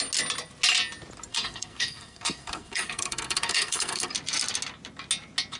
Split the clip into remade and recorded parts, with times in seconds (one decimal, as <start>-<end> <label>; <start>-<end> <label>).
0.0-1.3 recorded; 1.3-4.1 remade; 4.1-5.6 recorded